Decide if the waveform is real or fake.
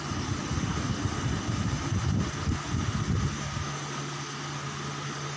real